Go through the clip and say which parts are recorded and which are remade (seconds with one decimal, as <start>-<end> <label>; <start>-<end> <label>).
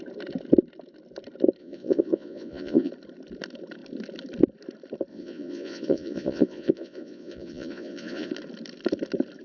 0.0-1.6 recorded; 1.6-2.9 remade; 2.9-5.1 recorded; 5.1-8.3 remade; 8.3-9.4 recorded